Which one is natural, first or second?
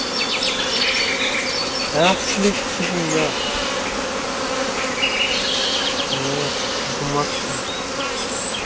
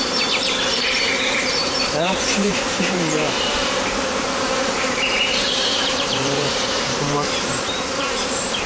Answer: first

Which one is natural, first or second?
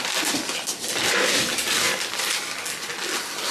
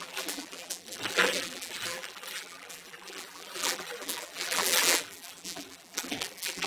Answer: first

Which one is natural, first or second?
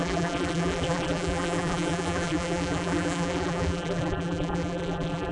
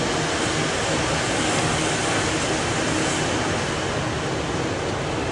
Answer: second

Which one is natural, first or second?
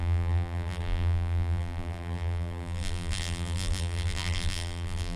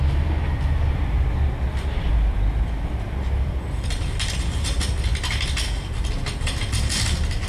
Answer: second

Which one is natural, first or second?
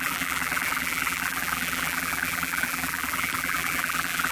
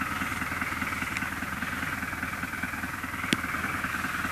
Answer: second